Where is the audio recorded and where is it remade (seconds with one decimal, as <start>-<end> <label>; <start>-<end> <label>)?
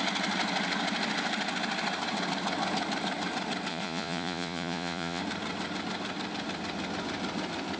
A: 0.0-3.7 recorded; 3.7-5.2 remade; 5.2-7.8 recorded